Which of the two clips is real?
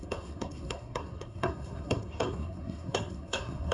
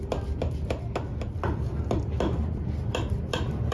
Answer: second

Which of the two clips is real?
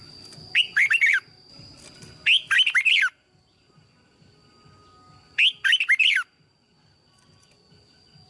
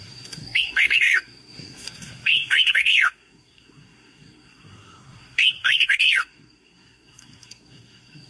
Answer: first